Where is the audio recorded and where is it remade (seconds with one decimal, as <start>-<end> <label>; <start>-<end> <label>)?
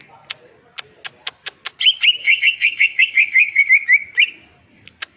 0.0-2.2 recorded; 2.2-3.7 remade; 3.7-5.2 recorded